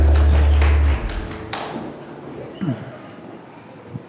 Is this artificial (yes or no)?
no